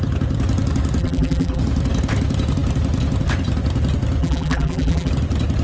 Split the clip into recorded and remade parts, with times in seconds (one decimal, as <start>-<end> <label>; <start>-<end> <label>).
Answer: 0.0-1.0 recorded; 1.0-1.6 remade; 1.6-4.2 recorded; 4.2-5.1 remade; 5.1-5.6 recorded